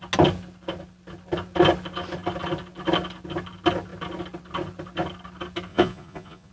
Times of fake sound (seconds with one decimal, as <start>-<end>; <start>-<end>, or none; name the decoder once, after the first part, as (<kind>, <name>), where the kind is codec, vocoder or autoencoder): 5.7-6.5 (vocoder, Vocos)